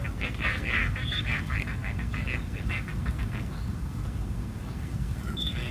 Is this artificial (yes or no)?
yes